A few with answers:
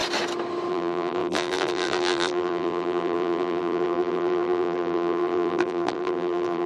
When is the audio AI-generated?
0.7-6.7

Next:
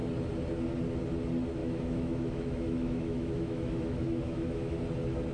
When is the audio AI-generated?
1.6-4.8

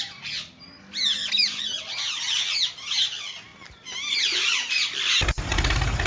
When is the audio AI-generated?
none

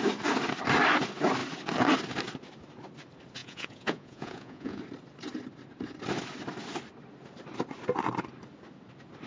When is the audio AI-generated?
3.4-4.8

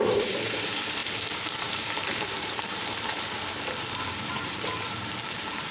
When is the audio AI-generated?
0.0-5.7